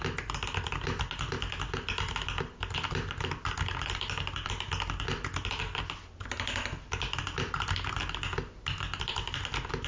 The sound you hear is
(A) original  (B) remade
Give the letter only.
A